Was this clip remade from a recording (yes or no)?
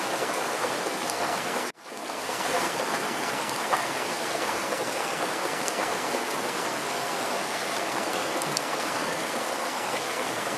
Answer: yes